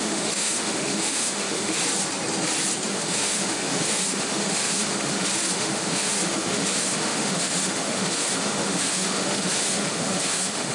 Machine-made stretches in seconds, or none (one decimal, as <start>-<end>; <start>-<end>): 0.0-1.8; 2.9-10.7